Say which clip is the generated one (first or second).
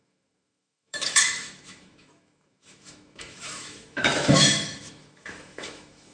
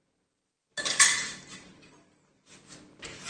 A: first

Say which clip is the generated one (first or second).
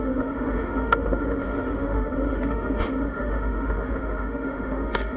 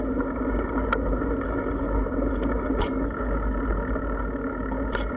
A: first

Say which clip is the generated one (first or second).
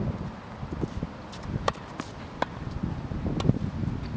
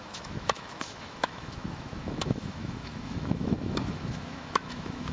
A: second